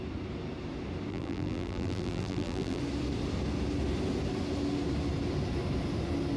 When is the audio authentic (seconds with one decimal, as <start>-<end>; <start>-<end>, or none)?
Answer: 0.0-1.1; 2.8-6.4

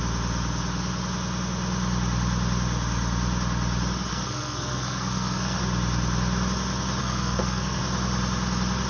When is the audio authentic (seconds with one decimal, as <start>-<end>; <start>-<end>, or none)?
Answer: 0.0-4.1; 5.6-7.0; 7.8-8.9

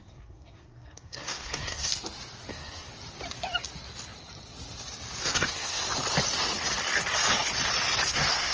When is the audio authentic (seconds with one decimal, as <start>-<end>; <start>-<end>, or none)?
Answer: 1.9-2.5; 2.9-5.2; 5.8-8.1

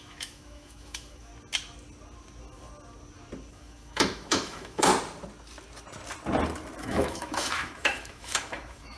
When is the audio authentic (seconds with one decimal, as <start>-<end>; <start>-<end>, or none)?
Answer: 1.3-3.5; 4.9-6.8

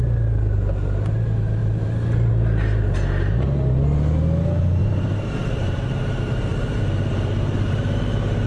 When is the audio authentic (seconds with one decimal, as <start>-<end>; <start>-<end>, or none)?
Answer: 0.0-4.8; 5.8-6.5; 8.0-8.5

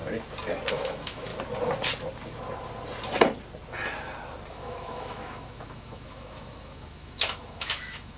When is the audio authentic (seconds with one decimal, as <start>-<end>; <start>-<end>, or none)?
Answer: 0.0-0.7; 1.3-4.5

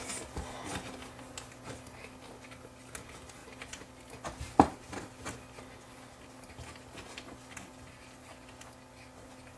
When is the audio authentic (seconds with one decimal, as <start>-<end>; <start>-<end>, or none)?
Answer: 0.0-9.6

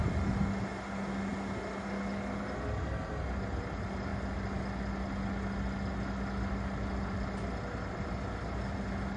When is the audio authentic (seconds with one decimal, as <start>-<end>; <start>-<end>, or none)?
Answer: 0.0-9.2